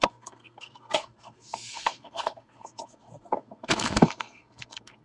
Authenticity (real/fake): fake